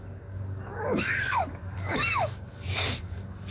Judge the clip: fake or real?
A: fake